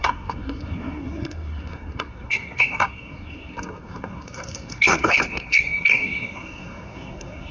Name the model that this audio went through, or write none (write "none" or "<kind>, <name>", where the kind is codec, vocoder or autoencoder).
codec, SNAC